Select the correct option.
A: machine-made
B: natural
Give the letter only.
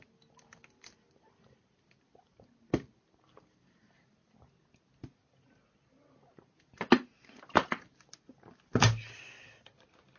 B